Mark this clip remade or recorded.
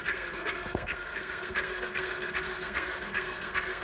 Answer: remade